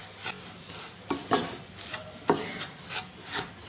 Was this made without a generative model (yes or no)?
yes